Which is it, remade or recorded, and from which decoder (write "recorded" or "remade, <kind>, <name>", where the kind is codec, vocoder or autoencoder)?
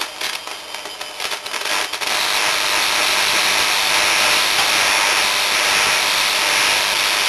recorded